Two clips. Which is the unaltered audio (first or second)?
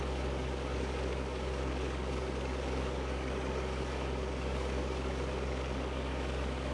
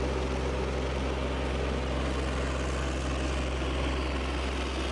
second